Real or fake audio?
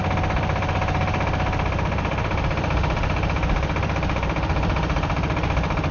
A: real